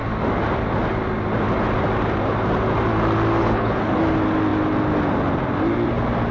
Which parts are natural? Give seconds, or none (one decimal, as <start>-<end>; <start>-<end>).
0.0-3.4; 4.0-6.3